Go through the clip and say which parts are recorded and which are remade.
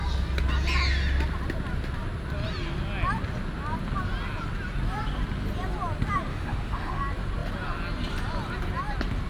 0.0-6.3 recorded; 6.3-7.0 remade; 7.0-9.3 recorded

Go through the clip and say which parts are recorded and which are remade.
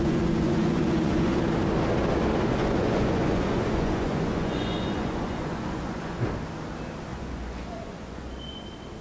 0.0-1.4 remade; 1.4-2.6 recorded; 2.6-6.3 remade; 6.3-7.1 recorded; 7.1-8.6 remade; 8.6-9.0 recorded